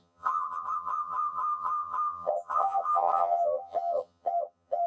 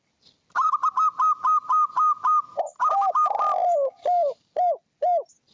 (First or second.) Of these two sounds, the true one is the second